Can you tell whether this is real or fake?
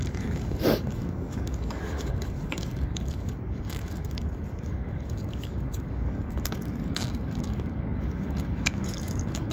fake